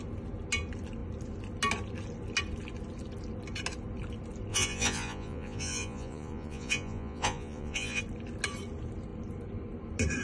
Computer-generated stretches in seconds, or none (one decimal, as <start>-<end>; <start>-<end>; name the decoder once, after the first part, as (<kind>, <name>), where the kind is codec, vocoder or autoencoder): 4.5-8.0 (vocoder, Vocos)